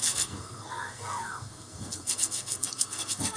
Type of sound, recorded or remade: remade